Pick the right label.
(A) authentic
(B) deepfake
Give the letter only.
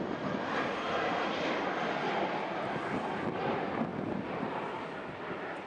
A